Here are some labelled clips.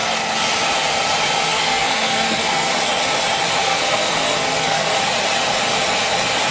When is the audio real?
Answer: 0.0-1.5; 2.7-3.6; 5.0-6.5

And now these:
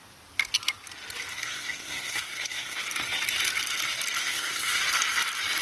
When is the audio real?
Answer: 0.0-1.3; 2.8-4.2; 4.8-5.6

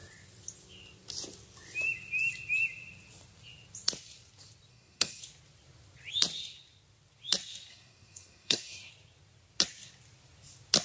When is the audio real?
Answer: 0.0-4.7; 5.2-7.7; 8.9-10.8

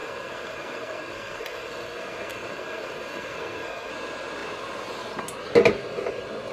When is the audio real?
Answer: 3.9-6.5

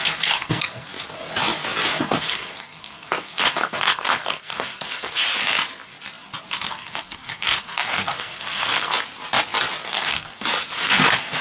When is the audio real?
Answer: 0.9-2.0; 5.2-6.5; 8.9-9.9

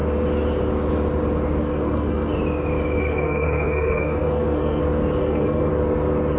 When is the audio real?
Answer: 0.0-1.7; 2.3-3.0; 4.8-5.2; 5.7-6.4